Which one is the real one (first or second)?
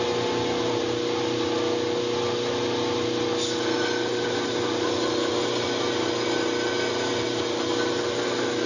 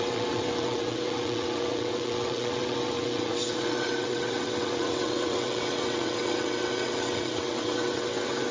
first